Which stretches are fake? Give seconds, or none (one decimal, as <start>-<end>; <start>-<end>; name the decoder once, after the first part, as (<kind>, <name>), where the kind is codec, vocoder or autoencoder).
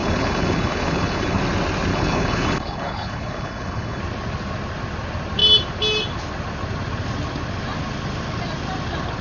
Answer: 0.0-1.4 (codec, HILCodec); 1.9-4.0